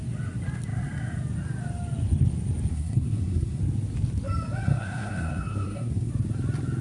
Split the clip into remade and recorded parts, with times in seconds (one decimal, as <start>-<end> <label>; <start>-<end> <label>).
0.0-2.7 recorded; 2.7-3.6 remade; 3.6-4.7 recorded; 4.7-6.1 remade; 6.1-6.8 recorded